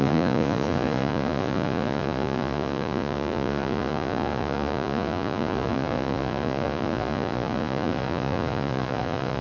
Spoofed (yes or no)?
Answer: yes